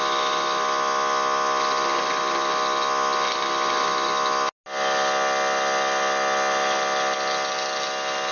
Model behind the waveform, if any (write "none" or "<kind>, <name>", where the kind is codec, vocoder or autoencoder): none